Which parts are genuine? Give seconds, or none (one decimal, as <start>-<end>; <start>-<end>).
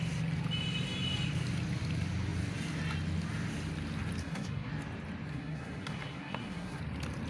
0.0-4.2; 4.7-5.3; 6.8-7.3